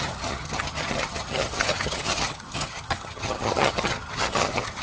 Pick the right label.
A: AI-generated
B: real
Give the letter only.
A